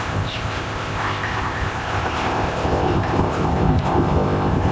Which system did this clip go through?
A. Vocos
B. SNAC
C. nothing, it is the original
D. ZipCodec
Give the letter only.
D